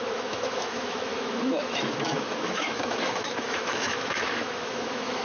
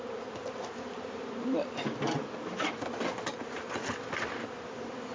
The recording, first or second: second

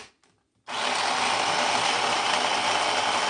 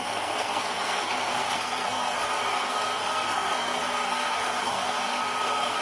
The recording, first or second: first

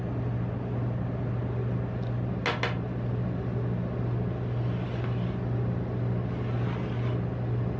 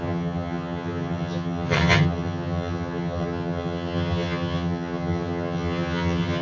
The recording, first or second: first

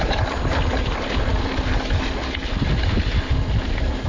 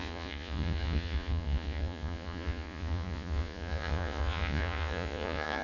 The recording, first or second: first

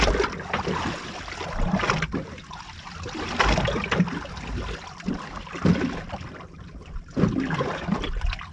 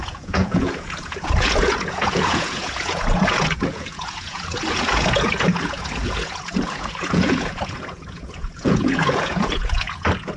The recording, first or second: first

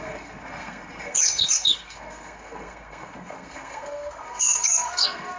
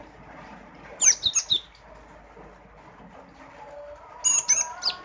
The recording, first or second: second